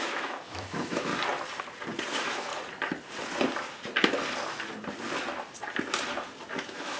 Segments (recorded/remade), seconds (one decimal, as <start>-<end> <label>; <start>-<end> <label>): 0.0-1.1 remade; 1.1-2.1 recorded; 2.1-2.5 remade; 2.5-6.5 recorded; 6.5-7.0 remade